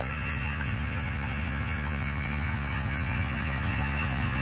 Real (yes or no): no